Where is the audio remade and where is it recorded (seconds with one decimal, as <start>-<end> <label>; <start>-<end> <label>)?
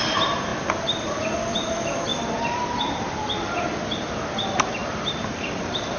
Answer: 0.0-2.1 recorded; 2.1-3.1 remade; 3.1-4.8 recorded; 4.8-6.0 remade